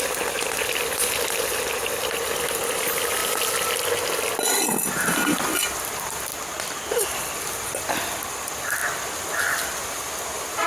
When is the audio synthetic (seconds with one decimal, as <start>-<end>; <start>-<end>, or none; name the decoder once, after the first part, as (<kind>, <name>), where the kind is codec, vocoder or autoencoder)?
0.0-3.2 (vocoder, BigVGAN v2); 4.6-6.3; 6.9-8.8